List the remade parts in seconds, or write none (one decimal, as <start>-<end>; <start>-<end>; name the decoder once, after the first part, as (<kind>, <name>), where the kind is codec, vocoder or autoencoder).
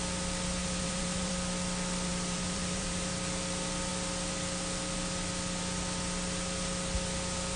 0.6-1.3 (vocoder, BigVGAN v2); 2.1-3.1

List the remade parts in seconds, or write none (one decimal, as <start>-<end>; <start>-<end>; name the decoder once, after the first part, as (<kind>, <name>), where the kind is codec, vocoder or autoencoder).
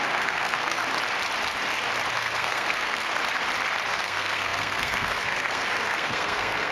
0.0-0.8 (codec, SNAC); 2.1-3.1; 3.9-6.7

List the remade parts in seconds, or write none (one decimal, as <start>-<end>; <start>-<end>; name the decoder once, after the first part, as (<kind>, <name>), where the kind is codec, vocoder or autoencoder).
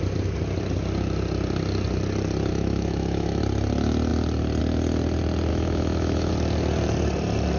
2.5-3.4 (autoencoder, DAC-VAE); 5.5-6.3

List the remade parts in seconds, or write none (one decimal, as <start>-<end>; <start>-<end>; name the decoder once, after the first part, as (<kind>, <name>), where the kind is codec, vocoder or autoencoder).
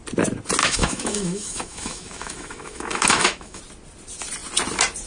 0.6-3.6 (autoencoder, DAC-VAE)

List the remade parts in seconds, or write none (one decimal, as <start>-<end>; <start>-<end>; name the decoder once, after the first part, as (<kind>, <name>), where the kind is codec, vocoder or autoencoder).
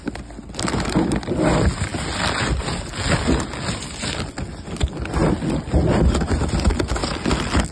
none